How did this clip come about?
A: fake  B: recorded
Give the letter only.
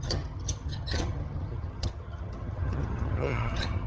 A